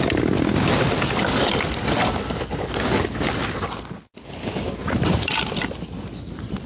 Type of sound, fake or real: real